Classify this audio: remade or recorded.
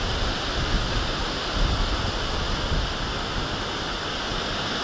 recorded